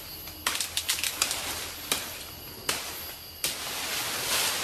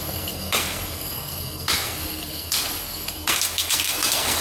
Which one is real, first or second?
first